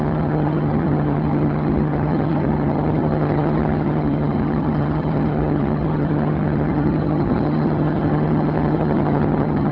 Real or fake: fake